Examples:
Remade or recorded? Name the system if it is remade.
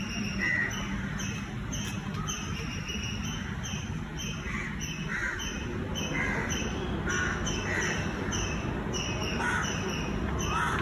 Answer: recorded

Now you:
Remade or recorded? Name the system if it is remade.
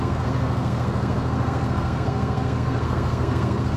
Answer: remade, codec, SNAC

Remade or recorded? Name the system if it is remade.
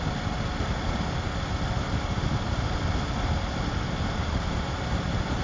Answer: recorded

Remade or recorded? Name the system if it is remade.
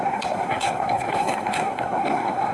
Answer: remade, codec, SNAC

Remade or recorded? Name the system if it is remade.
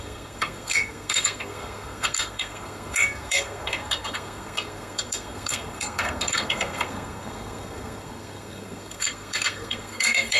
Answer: remade, codec, SNAC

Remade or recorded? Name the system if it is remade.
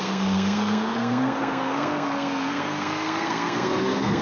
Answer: remade, codec, SNAC